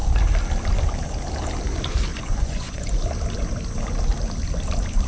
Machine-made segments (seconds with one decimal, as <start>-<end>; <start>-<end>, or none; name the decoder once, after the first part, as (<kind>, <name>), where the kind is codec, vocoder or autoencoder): 2.1-3.0 (vocoder, Vocos)

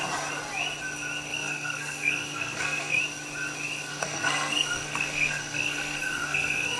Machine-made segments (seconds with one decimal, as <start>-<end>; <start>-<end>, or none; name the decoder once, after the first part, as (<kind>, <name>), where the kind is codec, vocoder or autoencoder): 1.3-3.0 (codec, SNAC); 3.9-6.8